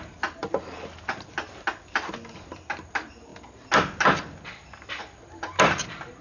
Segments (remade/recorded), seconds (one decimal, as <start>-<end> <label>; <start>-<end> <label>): 0.0-6.2 recorded